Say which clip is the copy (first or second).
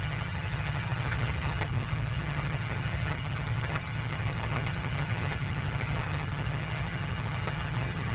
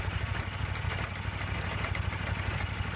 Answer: first